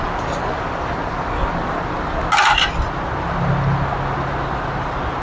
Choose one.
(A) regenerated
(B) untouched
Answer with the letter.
B